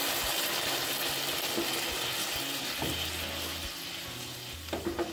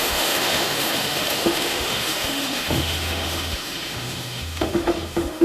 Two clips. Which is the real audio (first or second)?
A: first